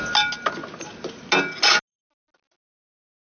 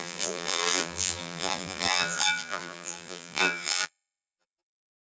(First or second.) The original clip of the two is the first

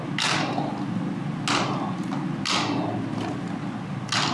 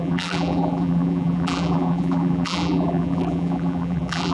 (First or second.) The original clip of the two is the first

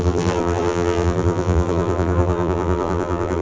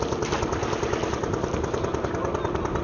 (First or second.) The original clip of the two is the second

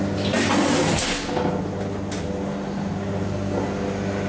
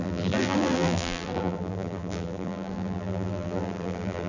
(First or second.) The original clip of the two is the first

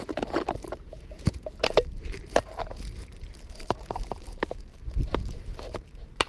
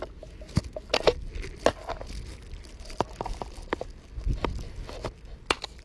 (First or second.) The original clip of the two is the second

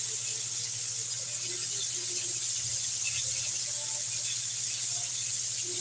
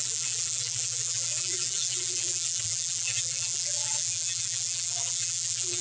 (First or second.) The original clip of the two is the first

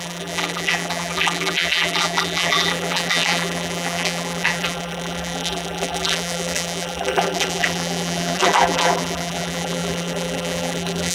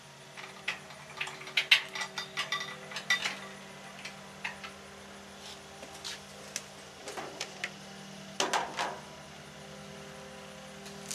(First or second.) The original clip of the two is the second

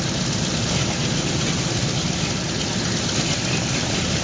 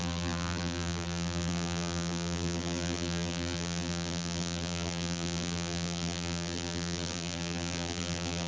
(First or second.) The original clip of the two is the first